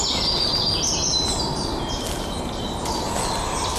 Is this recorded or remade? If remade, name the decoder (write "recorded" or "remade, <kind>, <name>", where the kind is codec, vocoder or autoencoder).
recorded